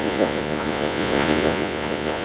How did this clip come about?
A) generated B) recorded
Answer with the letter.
A